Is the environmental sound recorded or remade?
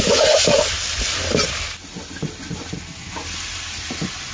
recorded